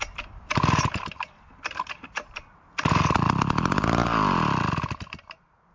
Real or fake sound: real